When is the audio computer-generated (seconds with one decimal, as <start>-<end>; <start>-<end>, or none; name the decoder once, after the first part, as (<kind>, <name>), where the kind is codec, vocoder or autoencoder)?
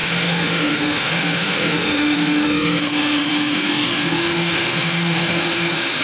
0.0-6.0 (autoencoder, DAC-VAE)